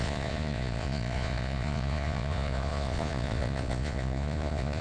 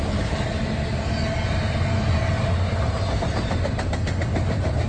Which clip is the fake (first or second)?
first